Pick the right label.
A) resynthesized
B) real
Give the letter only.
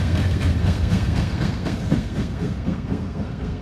A